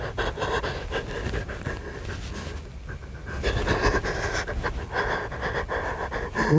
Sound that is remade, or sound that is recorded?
recorded